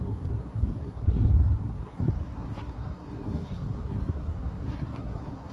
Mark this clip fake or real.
fake